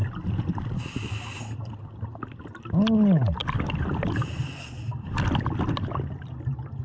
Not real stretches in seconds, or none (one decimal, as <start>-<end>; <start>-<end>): none

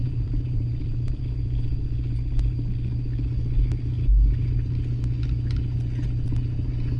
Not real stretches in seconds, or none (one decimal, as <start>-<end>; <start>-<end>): 0.0-1.2